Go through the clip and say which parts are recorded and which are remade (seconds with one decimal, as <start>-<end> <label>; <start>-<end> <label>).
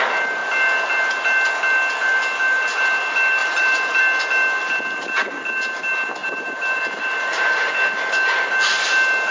0.0-3.4 recorded; 3.4-4.0 remade; 4.0-6.2 recorded; 6.2-7.7 remade; 7.7-9.3 recorded